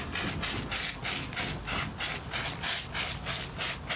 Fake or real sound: real